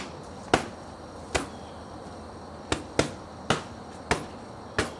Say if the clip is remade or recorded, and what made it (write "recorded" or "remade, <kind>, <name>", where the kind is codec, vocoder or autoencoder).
recorded